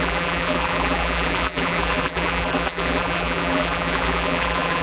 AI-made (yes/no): yes